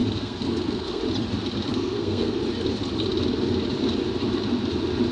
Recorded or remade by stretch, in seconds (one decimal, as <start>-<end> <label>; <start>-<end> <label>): 0.0-1.0 remade; 1.0-1.7 recorded; 1.7-2.4 remade; 2.4-5.1 recorded